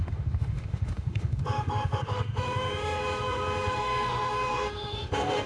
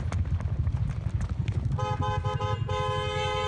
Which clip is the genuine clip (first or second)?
second